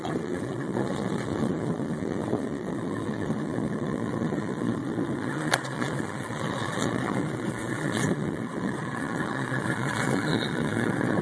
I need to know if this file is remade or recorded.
remade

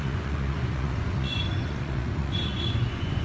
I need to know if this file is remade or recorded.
remade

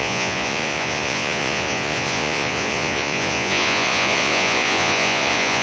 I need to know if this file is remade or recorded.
remade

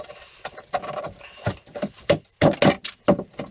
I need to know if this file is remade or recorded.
recorded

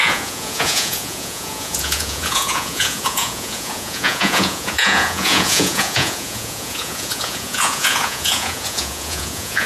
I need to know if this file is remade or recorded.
remade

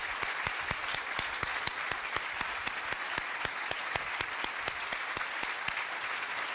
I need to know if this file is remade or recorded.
recorded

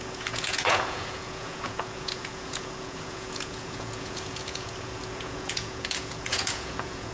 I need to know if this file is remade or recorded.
remade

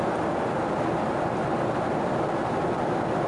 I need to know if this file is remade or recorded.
recorded